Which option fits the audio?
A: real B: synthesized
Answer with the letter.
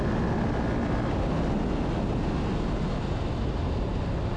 A